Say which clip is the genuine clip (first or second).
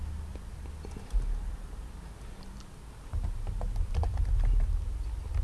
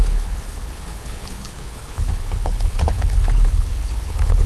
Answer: first